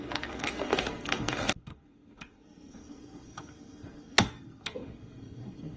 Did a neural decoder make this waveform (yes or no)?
yes